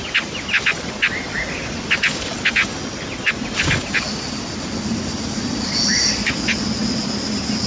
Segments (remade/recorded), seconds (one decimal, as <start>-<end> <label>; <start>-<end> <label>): 0.0-7.7 recorded